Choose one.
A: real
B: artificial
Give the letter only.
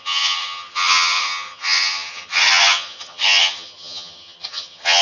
B